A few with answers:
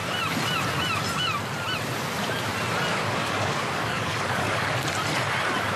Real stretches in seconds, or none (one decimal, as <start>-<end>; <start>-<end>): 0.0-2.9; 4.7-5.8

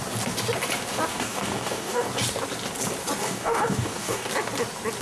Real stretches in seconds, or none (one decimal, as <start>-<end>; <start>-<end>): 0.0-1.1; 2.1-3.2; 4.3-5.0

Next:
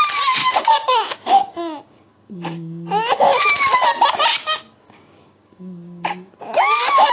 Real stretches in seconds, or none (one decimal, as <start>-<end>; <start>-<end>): 0.0-0.4; 3.4-4.3